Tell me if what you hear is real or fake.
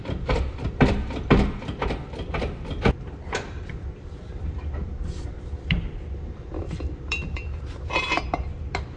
fake